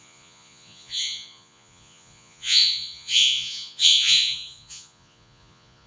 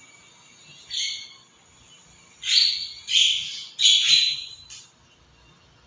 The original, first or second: second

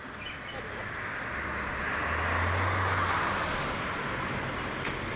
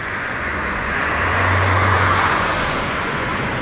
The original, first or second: first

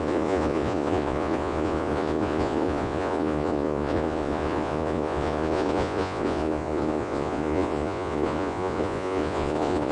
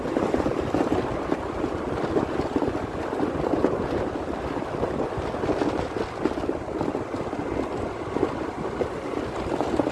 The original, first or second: second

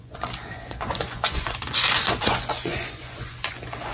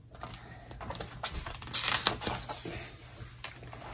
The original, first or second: second